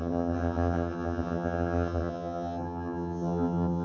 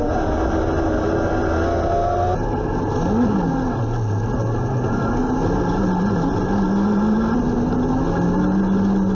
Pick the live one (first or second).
second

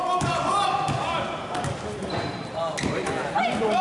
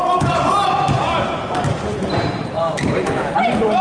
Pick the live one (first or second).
first